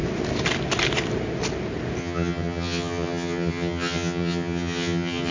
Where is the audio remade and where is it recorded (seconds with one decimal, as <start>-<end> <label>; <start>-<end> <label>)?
0.0-2.0 recorded; 2.0-5.3 remade